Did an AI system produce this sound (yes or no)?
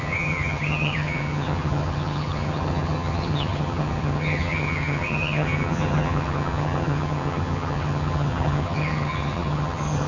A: yes